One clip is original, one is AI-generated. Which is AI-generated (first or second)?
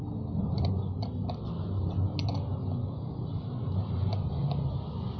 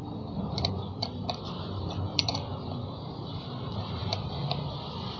second